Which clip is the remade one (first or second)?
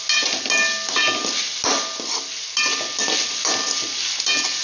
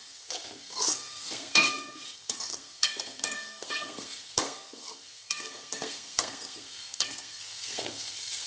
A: second